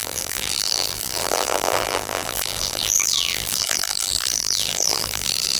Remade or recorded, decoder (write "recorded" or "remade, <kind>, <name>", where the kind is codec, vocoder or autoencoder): remade, vocoder, BigVGAN v2